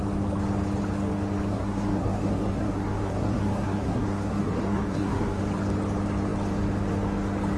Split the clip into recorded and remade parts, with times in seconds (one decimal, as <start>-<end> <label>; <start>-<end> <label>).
0.0-1.5 recorded; 1.5-5.4 remade; 5.4-7.6 recorded